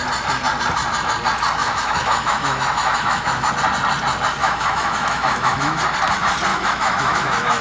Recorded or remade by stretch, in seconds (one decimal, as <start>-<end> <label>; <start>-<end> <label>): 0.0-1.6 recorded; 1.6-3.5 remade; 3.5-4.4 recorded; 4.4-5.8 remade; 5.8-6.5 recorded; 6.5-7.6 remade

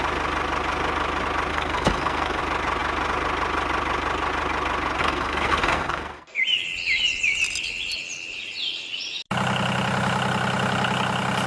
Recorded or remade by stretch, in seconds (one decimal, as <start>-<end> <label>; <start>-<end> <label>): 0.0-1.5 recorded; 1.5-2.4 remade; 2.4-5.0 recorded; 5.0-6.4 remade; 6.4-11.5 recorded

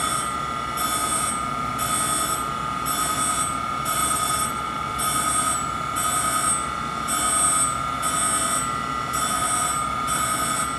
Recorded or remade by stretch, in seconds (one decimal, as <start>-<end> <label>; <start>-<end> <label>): 0.0-4.0 recorded; 4.0-4.9 remade; 4.9-10.8 recorded